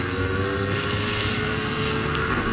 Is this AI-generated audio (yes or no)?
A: yes